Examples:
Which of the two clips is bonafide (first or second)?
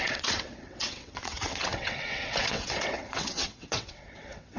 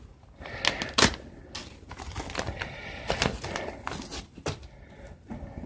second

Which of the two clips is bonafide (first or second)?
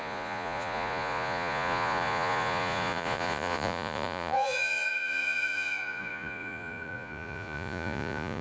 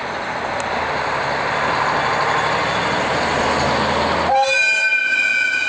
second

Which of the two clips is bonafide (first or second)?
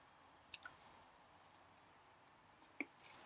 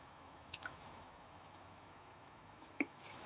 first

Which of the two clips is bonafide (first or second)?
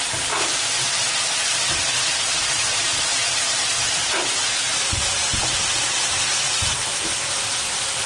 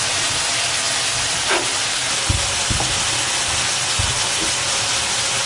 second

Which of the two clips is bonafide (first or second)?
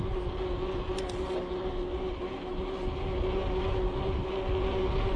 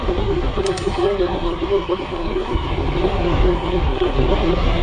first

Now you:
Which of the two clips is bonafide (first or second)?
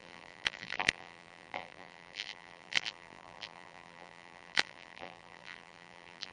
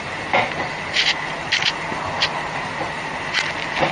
second